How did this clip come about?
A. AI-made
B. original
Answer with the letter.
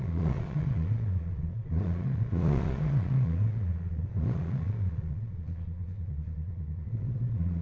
A